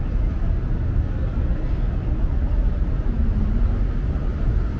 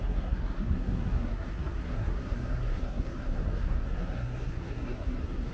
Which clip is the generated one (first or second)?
second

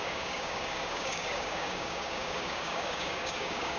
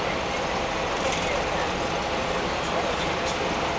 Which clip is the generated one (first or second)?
first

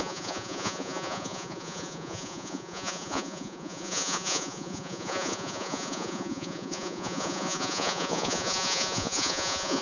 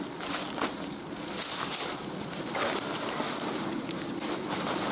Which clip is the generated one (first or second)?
first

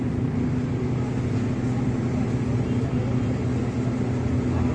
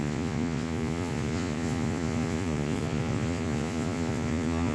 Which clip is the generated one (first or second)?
second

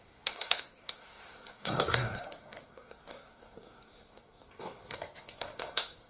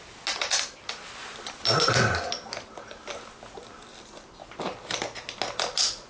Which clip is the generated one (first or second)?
first